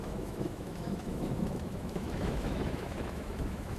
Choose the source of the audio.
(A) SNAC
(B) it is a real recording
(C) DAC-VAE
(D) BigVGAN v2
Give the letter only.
C